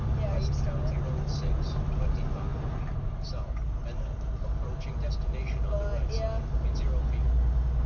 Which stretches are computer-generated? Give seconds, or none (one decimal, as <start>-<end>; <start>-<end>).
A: none